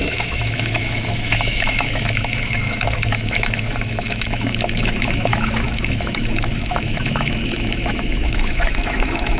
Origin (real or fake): fake